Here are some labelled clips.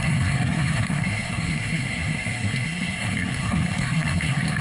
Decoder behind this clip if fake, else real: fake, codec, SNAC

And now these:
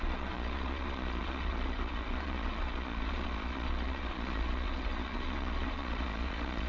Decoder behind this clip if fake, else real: fake, vocoder, Vocos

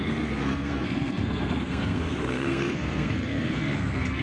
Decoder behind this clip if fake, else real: fake, codec, SNAC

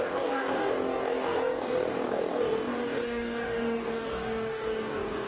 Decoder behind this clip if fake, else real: fake, codec, DAC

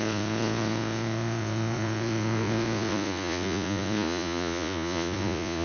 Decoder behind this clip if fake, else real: fake, vocoder, Vocos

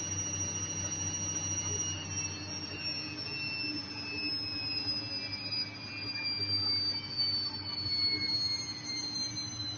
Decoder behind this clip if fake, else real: real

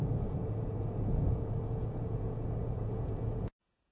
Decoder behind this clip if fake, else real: fake, vocoder, Vocos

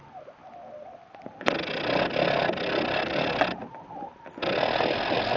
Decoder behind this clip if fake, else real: real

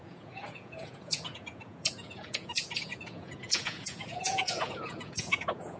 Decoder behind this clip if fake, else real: fake, vocoder, Vocos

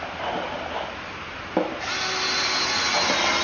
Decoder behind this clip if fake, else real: real